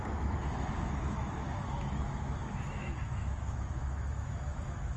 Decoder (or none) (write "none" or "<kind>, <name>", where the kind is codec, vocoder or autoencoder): autoencoder, DAC-VAE